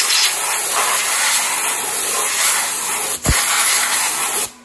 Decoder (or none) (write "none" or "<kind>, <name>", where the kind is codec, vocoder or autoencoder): none